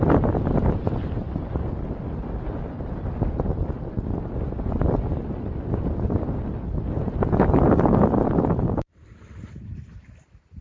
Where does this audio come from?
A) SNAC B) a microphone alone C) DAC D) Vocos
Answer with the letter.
B